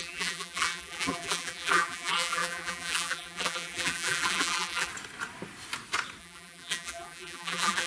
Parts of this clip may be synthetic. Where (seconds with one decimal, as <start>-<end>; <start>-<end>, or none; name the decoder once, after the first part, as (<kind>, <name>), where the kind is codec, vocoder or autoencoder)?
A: 0.0-4.9 (vocoder, BigVGAN v2); 6.2-7.9